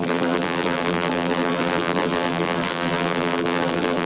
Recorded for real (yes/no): no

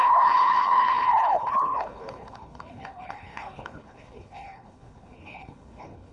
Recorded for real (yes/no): no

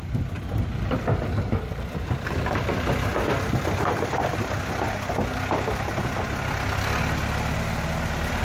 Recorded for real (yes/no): yes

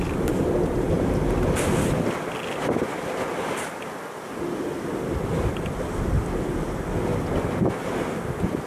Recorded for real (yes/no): yes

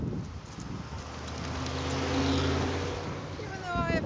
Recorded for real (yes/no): yes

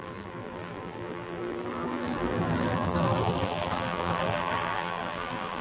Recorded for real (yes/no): no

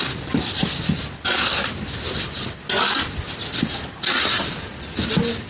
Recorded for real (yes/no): yes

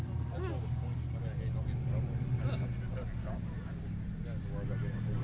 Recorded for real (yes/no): yes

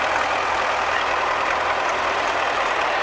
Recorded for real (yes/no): yes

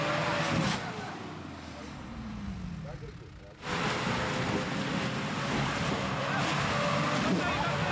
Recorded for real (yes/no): yes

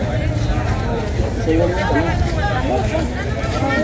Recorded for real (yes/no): yes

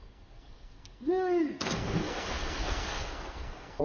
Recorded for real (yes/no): no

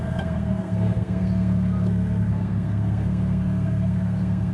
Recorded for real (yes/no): no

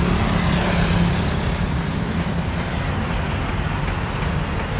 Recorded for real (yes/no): yes